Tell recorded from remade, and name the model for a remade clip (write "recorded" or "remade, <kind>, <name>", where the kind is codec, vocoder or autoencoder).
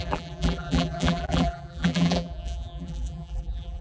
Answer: remade, vocoder, BigVGAN v2